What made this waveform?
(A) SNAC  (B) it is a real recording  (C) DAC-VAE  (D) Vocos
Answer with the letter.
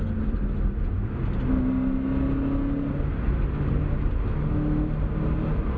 B